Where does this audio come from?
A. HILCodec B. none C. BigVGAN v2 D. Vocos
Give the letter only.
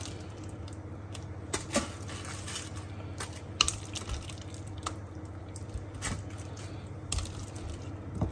B